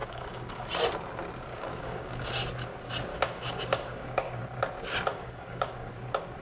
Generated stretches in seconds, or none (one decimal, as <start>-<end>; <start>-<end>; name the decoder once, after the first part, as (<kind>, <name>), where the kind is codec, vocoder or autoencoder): 0.0-0.7 (codec, DAC); 1.5-2.3; 3.1-4.4; 5.1-5.7